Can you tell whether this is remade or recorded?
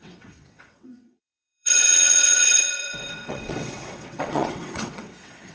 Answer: remade